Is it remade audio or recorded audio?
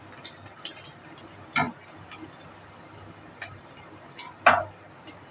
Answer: recorded